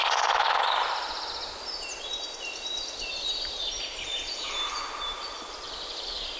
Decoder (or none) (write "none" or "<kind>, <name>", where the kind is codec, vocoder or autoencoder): none